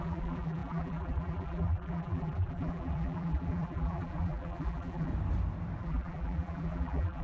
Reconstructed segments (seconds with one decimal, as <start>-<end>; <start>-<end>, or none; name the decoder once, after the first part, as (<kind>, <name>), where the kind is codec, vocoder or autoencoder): 0.0-5.1 (vocoder, BigVGAN v2); 5.8-7.2